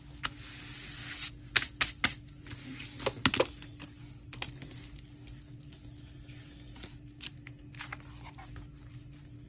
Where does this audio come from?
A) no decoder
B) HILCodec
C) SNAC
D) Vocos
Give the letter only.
A